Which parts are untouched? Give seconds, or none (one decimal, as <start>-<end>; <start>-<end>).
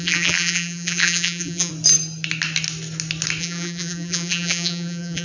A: 1.7-3.4